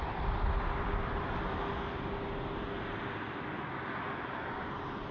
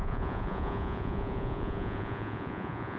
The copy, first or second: second